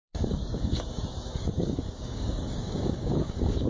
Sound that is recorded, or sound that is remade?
remade